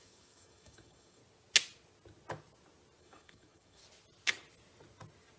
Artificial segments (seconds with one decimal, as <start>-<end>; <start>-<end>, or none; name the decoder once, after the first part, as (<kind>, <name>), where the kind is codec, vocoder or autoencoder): 0.0-1.2 (autoencoder, DAC-VAE); 3.0-3.8